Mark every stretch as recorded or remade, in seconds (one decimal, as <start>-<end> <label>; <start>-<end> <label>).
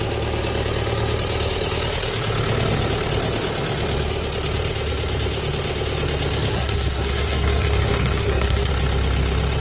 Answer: 0.0-6.5 recorded; 6.5-8.7 remade; 8.7-9.6 recorded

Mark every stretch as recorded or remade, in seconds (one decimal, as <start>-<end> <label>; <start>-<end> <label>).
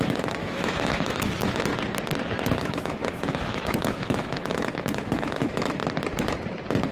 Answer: 0.0-1.7 remade; 1.7-2.6 recorded; 2.6-5.8 remade; 5.8-6.9 recorded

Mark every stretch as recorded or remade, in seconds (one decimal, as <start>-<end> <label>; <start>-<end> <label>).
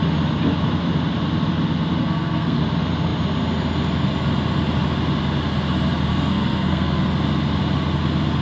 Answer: 0.0-2.0 recorded; 2.0-2.6 remade; 2.6-6.1 recorded; 6.1-7.0 remade; 7.0-8.4 recorded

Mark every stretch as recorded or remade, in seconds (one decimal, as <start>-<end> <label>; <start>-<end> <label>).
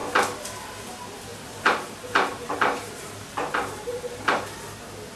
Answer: 0.0-1.3 recorded; 1.3-4.4 remade; 4.4-5.2 recorded